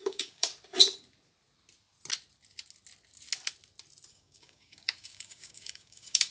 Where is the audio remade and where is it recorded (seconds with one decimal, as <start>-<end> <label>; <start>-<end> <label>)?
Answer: 0.0-0.5 remade; 0.5-4.1 recorded; 4.1-6.3 remade